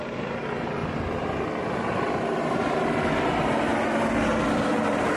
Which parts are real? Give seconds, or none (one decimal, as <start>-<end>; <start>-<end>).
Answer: 0.8-3.2; 3.7-4.5